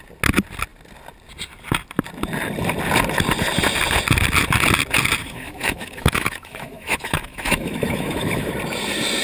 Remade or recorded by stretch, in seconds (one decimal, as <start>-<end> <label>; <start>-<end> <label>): 0.0-5.2 recorded; 5.2-8.5 remade; 8.5-9.2 recorded